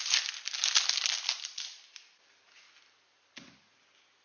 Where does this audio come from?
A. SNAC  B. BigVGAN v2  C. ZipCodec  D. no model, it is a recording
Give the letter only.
D